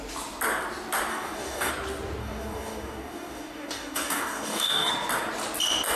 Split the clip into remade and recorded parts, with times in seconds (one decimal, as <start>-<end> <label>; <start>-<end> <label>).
0.0-1.1 recorded; 1.1-1.7 remade; 1.7-2.2 recorded; 2.2-4.9 remade; 4.9-6.0 recorded